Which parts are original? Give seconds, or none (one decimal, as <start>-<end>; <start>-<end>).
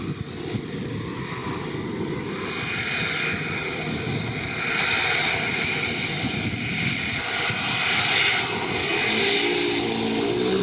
0.0-10.6